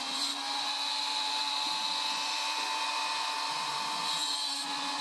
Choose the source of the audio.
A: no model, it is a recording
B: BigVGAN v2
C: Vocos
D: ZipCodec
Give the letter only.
C